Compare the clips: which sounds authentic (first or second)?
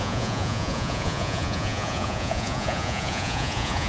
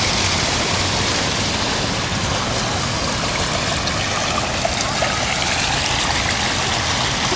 second